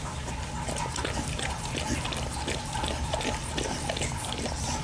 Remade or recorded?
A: recorded